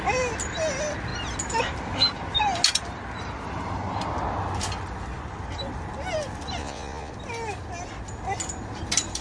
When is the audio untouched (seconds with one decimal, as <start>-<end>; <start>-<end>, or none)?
0.0-6.6; 7.1-9.2